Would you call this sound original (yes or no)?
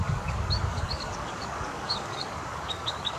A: no